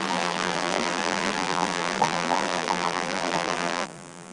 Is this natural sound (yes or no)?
no